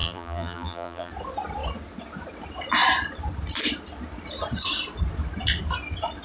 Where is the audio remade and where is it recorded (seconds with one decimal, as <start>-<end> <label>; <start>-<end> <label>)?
0.0-1.1 remade; 1.1-6.2 recorded